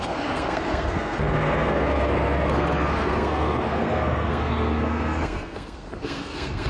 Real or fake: fake